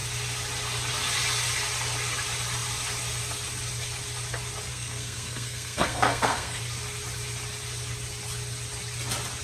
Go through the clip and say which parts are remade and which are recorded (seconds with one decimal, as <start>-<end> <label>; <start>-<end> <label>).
0.0-4.7 recorded; 4.7-6.6 remade; 6.6-9.4 recorded

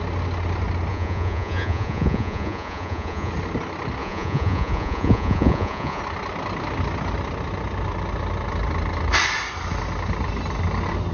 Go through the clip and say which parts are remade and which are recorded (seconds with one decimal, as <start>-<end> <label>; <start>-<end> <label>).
0.0-0.9 recorded; 0.9-3.3 remade; 3.3-4.0 recorded; 4.0-6.0 remade; 6.0-11.1 recorded

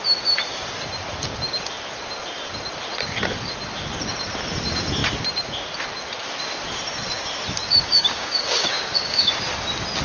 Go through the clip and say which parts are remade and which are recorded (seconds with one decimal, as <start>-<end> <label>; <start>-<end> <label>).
0.0-7.6 recorded; 7.6-9.3 remade; 9.3-10.0 recorded

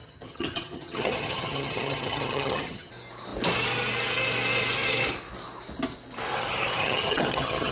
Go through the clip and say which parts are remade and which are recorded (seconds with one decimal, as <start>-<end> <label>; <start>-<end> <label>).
0.0-2.9 remade; 2.9-6.8 recorded; 6.8-7.7 remade